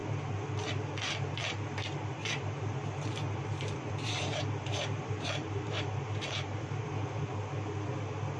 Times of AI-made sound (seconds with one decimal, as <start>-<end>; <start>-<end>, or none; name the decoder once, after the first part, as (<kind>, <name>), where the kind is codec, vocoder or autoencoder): 2.2-7.2 (vocoder, BigVGAN v2)